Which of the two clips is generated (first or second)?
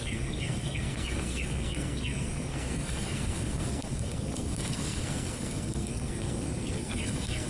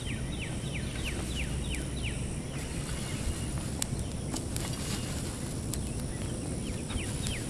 first